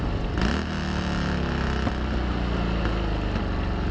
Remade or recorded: recorded